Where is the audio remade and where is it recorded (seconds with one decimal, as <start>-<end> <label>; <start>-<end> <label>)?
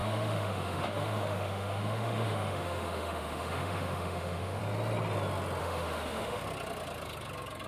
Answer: 0.0-4.6 remade; 4.6-5.6 recorded; 5.6-6.4 remade; 6.4-7.7 recorded